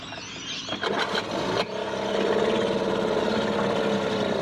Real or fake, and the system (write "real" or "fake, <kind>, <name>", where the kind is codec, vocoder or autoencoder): real